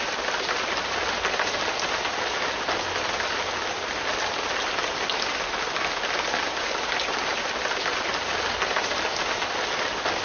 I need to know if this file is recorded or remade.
recorded